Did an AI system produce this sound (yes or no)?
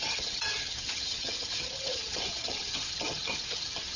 yes